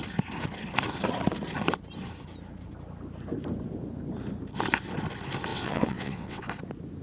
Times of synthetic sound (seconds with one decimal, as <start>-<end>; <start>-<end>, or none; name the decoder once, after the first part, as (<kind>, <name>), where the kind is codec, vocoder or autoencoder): 5.5-6.5 (vocoder, WaveNeXt)